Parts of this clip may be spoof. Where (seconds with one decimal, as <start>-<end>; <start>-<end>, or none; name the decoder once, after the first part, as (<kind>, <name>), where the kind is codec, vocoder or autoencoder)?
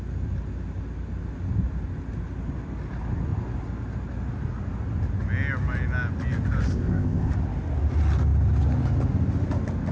6.7-7.3 (codec, ZipCodec)